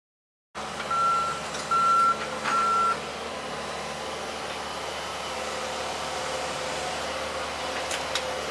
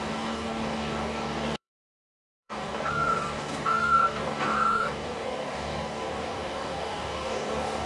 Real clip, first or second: first